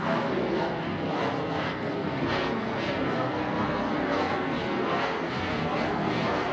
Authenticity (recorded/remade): remade